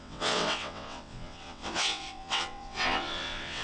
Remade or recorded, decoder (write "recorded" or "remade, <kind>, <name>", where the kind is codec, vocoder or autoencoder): remade, vocoder, WaveNeXt